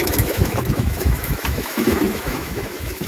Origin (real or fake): fake